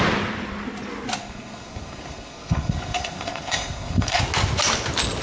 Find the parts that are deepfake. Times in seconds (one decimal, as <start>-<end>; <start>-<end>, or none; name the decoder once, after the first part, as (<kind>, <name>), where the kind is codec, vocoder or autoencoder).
1.2-4.2 (codec, SNAC)